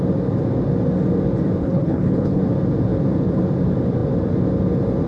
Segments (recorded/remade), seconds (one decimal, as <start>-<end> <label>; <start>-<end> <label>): 0.0-1.6 recorded; 1.6-2.4 remade; 2.4-5.1 recorded

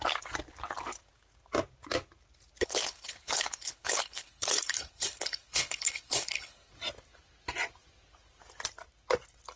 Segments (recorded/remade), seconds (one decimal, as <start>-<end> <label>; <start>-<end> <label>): 0.0-2.6 recorded; 2.6-6.7 remade; 6.7-9.6 recorded

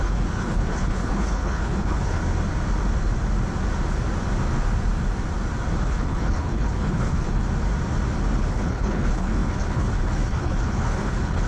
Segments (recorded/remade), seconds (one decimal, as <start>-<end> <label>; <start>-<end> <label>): 0.0-2.2 remade; 2.2-5.8 recorded; 5.8-7.4 remade; 7.4-8.4 recorded; 8.4-11.5 remade

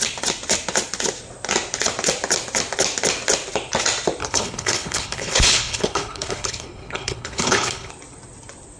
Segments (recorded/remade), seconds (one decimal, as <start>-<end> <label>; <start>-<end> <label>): 0.0-4.2 recorded; 4.2-7.9 remade; 7.9-8.8 recorded

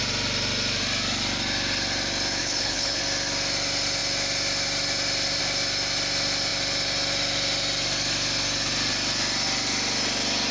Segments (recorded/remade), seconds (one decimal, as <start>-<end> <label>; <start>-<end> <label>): 0.0-2.4 recorded; 2.4-3.0 remade; 3.0-10.5 recorded

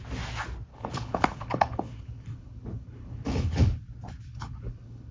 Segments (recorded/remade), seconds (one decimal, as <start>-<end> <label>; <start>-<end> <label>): 0.0-0.7 recorded; 0.7-3.8 remade; 3.8-4.3 recorded; 4.3-5.1 remade

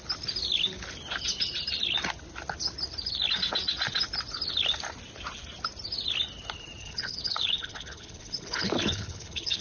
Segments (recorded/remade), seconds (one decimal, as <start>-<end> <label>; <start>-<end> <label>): 0.0-6.8 recorded; 6.8-9.6 remade

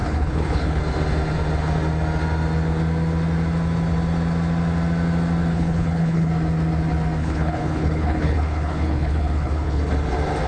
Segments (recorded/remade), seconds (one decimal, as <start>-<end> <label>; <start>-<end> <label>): 0.0-0.8 remade; 0.8-5.5 recorded; 5.5-6.3 remade; 6.3-7.2 recorded; 7.2-9.8 remade; 9.8-10.5 recorded